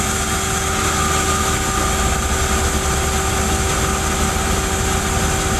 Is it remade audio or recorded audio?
recorded